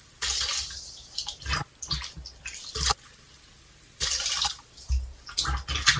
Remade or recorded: recorded